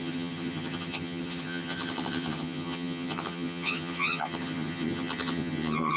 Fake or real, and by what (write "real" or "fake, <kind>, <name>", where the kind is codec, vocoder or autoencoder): fake, vocoder, HiFi-GAN